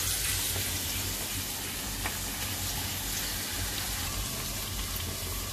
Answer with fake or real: real